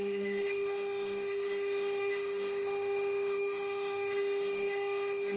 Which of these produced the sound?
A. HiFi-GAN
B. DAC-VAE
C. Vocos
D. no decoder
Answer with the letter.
B